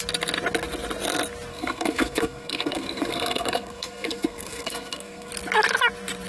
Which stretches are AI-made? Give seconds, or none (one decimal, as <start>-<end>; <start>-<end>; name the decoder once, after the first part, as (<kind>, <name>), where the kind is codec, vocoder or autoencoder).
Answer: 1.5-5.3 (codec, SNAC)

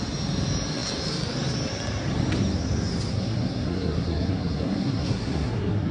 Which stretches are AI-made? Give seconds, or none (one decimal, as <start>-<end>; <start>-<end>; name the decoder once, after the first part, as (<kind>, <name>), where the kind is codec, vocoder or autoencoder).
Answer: 3.1-5.9 (codec, SNAC)

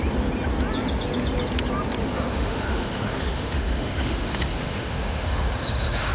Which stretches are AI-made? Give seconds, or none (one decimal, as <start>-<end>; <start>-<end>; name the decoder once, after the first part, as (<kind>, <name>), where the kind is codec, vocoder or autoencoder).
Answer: 2.0-6.1 (autoencoder, DAC-VAE)

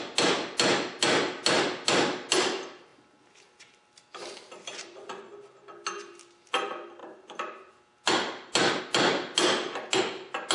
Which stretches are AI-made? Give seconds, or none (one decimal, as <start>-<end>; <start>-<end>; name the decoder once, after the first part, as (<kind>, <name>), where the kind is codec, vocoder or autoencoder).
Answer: none